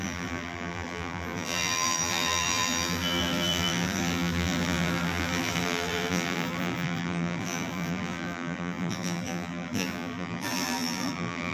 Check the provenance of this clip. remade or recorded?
remade